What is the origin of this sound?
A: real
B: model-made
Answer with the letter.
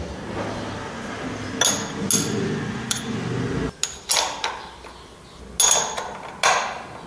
A